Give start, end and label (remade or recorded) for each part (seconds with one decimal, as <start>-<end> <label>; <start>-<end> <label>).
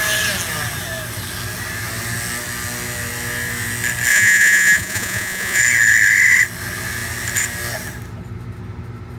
0.0-4.1 recorded; 4.1-5.6 remade; 5.6-9.2 recorded